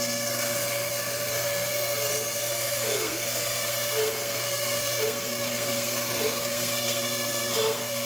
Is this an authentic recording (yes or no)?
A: no